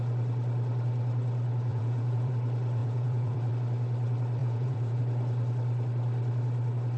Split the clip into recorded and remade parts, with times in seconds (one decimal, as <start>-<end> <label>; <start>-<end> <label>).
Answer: 0.0-1.7 recorded; 1.7-2.3 remade; 2.3-2.8 recorded; 2.8-3.5 remade; 3.5-4.4 recorded; 4.4-5.0 remade; 5.0-7.0 recorded